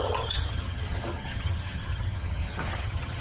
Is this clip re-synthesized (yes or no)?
yes